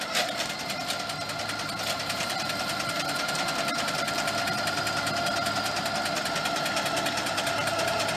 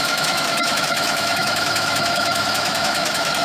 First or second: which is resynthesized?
second